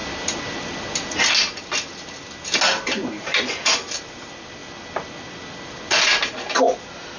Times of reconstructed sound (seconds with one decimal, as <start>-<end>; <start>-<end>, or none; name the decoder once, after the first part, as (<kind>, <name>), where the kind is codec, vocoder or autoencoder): none